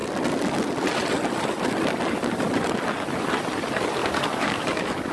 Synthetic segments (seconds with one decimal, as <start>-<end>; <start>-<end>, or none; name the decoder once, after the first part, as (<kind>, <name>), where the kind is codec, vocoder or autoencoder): 4.0-5.1 (codec, DAC)